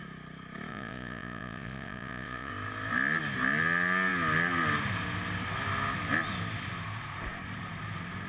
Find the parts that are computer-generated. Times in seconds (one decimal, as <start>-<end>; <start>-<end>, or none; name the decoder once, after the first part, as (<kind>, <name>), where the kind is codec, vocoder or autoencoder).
0.7-2.5 (vocoder, Vocos)